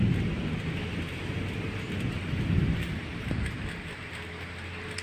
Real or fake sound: real